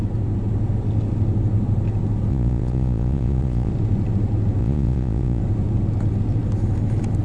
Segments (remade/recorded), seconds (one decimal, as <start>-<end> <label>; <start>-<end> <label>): 0.0-2.3 recorded; 2.3-3.7 remade; 3.7-4.6 recorded; 4.6-5.4 remade; 5.4-7.2 recorded